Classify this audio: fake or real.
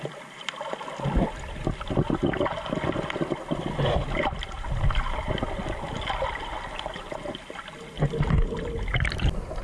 real